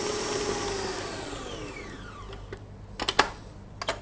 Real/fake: real